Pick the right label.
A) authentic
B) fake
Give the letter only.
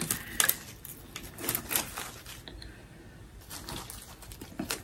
A